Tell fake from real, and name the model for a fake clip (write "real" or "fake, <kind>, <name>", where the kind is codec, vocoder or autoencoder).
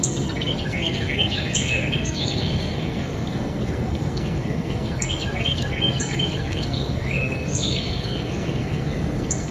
fake, codec, SNAC